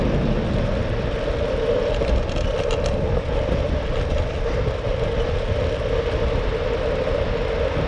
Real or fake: real